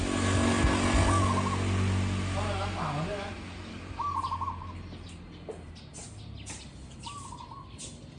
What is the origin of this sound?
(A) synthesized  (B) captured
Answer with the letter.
B